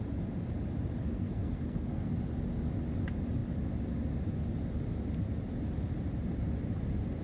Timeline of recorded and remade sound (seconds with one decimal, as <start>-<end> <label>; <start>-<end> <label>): 0.0-1.0 recorded; 1.0-2.1 remade; 2.1-7.2 recorded